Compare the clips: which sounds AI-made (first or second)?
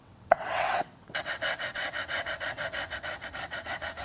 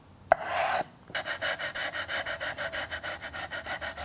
first